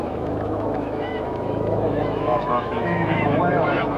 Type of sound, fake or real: fake